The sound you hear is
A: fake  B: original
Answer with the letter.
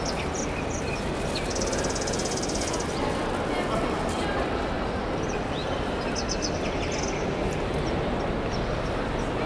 B